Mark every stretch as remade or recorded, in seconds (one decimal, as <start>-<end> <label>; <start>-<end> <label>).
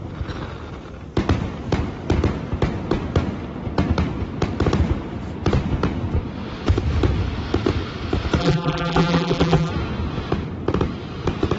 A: 0.0-8.4 recorded; 8.4-9.7 remade; 9.7-11.6 recorded